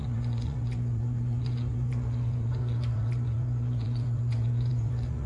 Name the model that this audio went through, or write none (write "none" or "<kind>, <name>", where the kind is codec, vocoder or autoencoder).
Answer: vocoder, Vocos